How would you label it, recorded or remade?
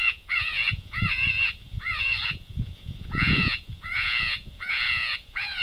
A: remade